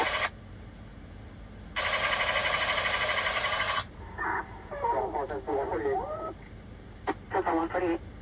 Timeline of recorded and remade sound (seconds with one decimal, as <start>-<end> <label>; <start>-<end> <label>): 0.0-2.4 recorded; 2.4-7.3 remade; 7.3-8.2 recorded